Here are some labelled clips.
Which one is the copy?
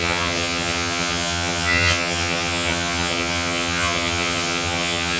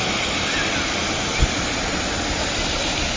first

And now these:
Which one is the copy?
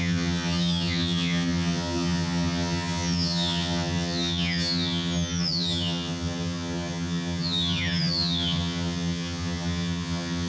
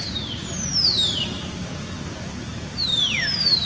first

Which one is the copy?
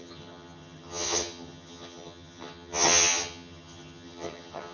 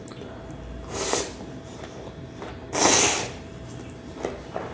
first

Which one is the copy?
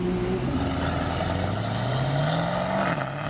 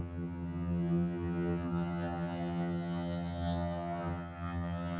second